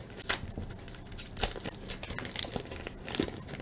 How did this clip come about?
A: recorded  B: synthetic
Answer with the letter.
A